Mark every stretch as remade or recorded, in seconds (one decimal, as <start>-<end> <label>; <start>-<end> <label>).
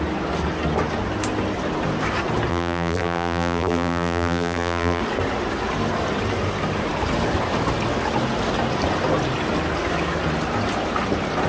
0.0-2.5 recorded; 2.5-5.0 remade; 5.0-11.5 recorded